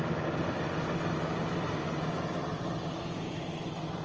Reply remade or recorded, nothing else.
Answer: recorded